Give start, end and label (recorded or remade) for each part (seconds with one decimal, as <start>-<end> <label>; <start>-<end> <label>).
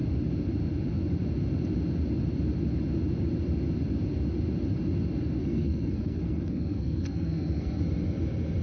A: 0.0-5.4 recorded; 5.4-7.8 remade; 7.8-8.6 recorded